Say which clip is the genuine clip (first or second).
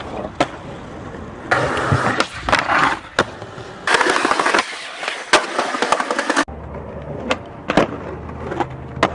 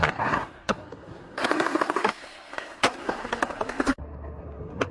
first